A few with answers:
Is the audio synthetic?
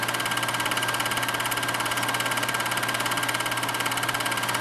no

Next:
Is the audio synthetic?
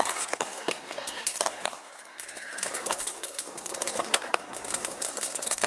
yes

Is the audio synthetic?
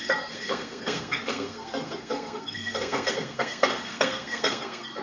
yes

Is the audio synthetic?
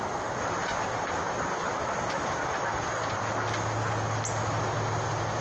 no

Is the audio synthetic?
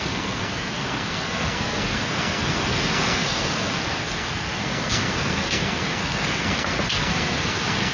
yes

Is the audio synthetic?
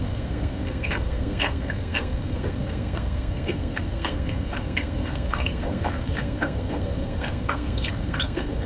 yes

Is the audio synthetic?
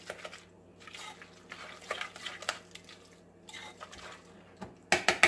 no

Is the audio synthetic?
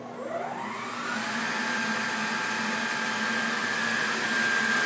no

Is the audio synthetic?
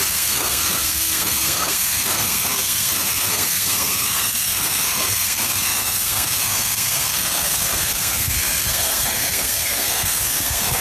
yes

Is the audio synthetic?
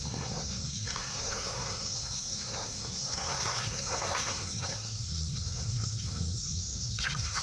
yes